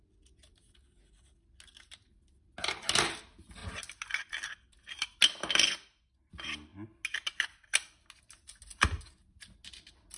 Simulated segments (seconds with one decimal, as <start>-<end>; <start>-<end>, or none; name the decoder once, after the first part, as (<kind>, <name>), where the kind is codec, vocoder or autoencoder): none